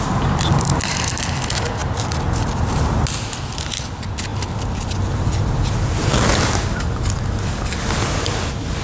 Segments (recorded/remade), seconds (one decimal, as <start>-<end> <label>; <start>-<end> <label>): 0.0-8.8 recorded